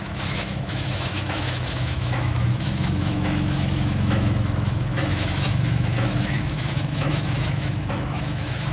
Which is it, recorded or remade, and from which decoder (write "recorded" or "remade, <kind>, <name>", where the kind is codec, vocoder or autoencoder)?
remade, autoencoder, DAC-VAE